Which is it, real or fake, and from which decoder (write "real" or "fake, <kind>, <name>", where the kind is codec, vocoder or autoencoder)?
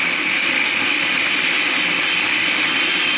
real